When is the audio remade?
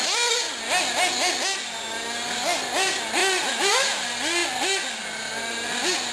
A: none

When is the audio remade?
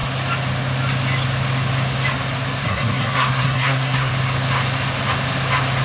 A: 2.6-4.1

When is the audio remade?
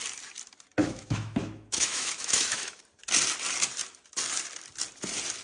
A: 0.8-2.8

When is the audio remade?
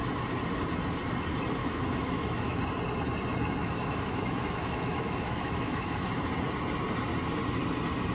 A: 1.6-2.6; 3.6-6.1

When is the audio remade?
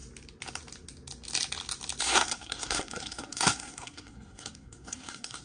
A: 2.0-5.4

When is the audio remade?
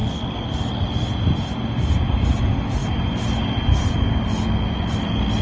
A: none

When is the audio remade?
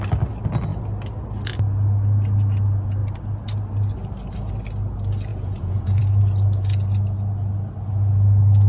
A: 5.3-6.0